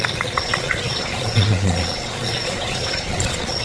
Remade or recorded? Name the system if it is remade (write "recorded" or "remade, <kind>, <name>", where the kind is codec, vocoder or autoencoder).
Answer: remade, vocoder, Vocos